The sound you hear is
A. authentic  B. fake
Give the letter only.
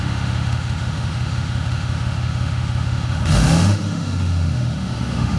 B